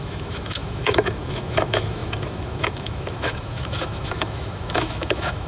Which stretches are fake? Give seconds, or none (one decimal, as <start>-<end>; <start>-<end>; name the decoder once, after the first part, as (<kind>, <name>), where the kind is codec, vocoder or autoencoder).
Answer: 0.0-5.5 (autoencoder, DAC-VAE)

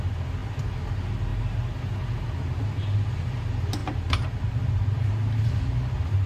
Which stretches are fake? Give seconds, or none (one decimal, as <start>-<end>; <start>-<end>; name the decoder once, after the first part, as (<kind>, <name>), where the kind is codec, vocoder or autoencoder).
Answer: 3.8-5.6 (vocoder, BigVGAN v2)

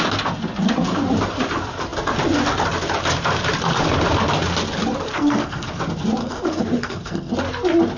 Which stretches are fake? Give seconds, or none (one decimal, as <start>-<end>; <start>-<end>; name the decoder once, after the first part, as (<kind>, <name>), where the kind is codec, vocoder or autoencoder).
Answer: 5.1-5.8 (codec, SNAC); 6.2-7.3

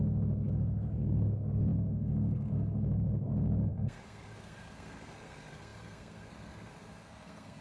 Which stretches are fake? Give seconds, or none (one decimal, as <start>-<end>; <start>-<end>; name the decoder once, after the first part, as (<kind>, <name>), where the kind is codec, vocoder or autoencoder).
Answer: 0.0-7.6 (codec, SNAC)

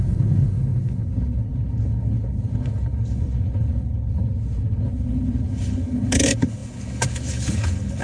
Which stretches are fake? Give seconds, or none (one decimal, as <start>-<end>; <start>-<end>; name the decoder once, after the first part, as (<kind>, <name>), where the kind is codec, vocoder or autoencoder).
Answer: 0.0-8.0 (codec, HILCodec)

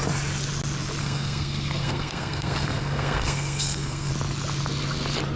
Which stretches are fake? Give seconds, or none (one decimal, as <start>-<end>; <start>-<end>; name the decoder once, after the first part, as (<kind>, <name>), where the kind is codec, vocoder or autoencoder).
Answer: 1.0-4.1 (codec, SNAC)

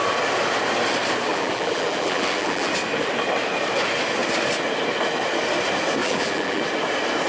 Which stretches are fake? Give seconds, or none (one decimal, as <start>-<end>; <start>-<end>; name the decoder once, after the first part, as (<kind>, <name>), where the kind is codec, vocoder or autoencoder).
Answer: 1.3-2.7 (vocoder, BigVGAN v2); 6.0-6.6

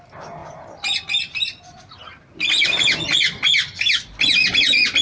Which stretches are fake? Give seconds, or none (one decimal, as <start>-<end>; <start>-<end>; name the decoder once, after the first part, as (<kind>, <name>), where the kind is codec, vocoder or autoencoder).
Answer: none